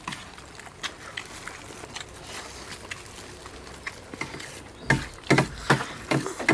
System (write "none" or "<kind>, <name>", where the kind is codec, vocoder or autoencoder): none